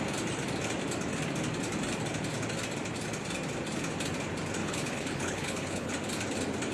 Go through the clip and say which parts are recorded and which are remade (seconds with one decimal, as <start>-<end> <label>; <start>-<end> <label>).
0.0-4.6 recorded; 4.6-5.9 remade; 5.9-6.7 recorded